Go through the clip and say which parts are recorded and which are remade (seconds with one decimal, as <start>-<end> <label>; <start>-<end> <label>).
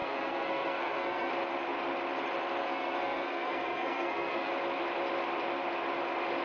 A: 0.0-1.3 remade; 1.3-2.6 recorded; 2.6-4.5 remade; 4.5-6.4 recorded